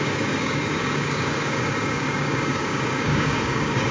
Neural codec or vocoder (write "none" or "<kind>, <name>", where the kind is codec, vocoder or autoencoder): codec, DAC